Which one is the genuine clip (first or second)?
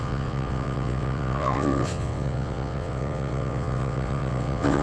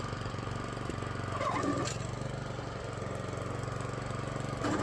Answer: second